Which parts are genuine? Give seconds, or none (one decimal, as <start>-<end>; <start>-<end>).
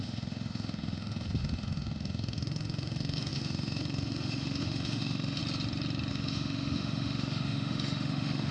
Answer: 5.4-6.1